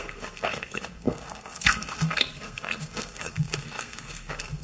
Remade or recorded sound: remade